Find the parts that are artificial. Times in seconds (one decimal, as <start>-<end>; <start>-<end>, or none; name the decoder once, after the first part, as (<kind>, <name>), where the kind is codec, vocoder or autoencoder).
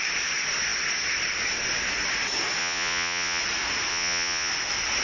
2.6-3.4 (vocoder, Vocos); 3.9-4.5